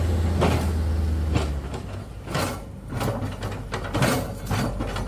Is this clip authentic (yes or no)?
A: yes